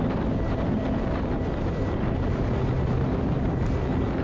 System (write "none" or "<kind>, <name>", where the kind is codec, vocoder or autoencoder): none